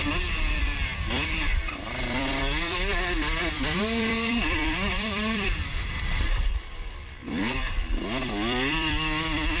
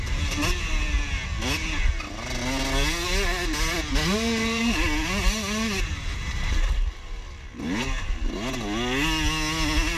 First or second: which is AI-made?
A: first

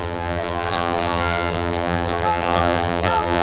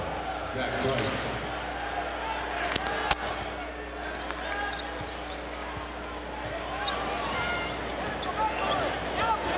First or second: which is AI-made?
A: first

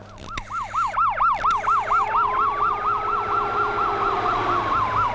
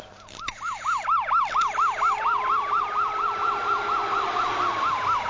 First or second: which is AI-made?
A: second